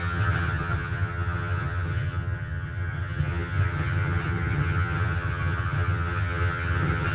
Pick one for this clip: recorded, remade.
remade